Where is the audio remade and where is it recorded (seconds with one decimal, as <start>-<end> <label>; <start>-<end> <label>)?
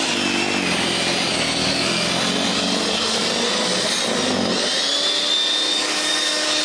0.0-1.6 recorded; 1.6-2.1 remade; 2.1-2.5 recorded; 2.5-3.2 remade; 3.2-5.7 recorded; 5.7-6.6 remade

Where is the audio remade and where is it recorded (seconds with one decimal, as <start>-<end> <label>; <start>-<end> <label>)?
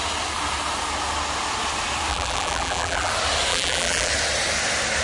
0.0-2.1 recorded; 2.1-3.1 remade; 3.1-3.5 recorded; 3.5-4.1 remade; 4.1-5.0 recorded